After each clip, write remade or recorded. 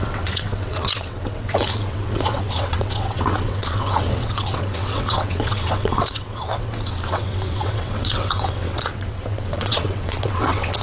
remade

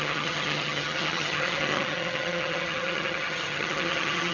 remade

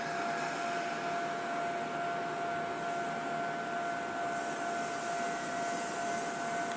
recorded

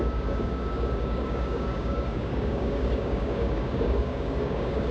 remade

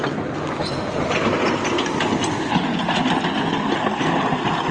recorded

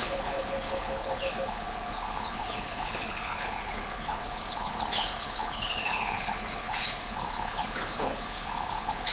remade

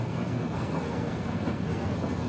remade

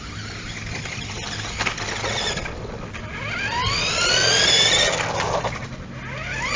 recorded